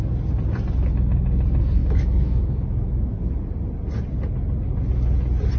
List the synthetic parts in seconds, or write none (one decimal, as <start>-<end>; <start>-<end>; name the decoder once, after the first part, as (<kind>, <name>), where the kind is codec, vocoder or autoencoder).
1.8-3.3 (autoencoder, DAC-VAE)